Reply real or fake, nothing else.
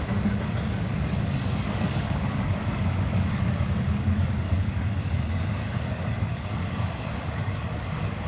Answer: fake